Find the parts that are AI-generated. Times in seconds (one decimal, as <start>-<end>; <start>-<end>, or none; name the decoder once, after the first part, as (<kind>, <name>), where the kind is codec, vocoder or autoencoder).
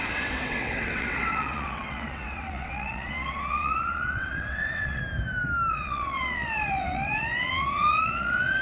0.0-5.0 (vocoder, WaveNeXt); 5.7-8.6